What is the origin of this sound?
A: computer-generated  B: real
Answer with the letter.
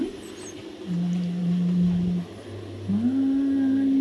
B